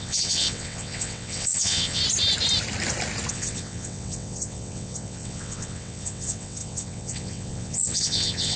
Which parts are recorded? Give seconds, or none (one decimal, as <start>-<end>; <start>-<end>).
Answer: 2.0-3.3